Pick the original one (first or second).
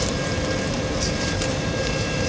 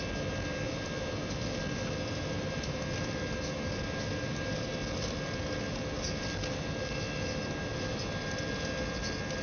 second